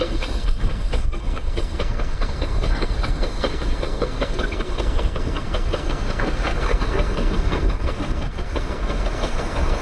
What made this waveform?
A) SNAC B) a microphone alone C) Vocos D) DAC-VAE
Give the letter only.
A